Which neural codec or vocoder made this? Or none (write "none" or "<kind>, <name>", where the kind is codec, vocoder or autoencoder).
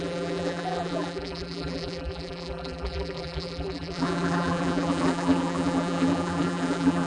vocoder, BigVGAN v2